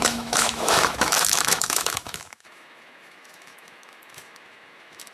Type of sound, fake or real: fake